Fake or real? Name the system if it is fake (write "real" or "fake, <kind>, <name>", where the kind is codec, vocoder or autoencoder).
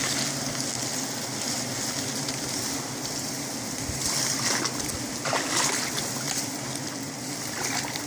real